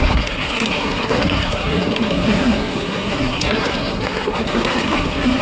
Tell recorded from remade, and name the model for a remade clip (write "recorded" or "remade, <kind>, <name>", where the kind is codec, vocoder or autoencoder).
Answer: remade, codec, SNAC